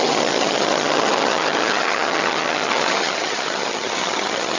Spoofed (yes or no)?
yes